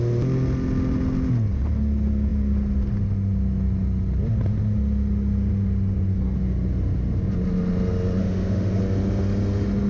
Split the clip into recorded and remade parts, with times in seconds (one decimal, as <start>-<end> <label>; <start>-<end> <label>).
0.0-8.2 recorded; 8.2-8.8 remade; 8.8-9.9 recorded